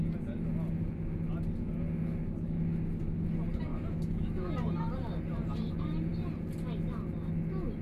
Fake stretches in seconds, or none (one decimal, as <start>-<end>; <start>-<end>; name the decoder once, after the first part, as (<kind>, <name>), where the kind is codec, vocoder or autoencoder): 3.7-4.5 (autoencoder, DAC-VAE)